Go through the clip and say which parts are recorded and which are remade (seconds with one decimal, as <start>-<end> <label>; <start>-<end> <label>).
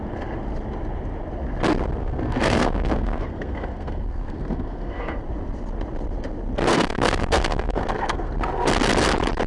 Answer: 0.0-2.0 recorded; 2.0-5.2 remade; 5.2-6.7 recorded; 6.7-8.3 remade; 8.3-9.5 recorded